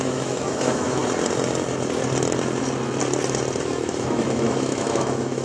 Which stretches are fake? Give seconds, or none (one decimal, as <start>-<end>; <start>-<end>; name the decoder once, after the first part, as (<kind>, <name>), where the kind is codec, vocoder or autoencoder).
0.0-1.0 (autoencoder, DAC-VAE); 3.6-5.4